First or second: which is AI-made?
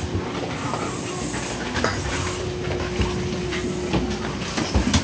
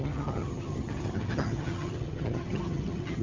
second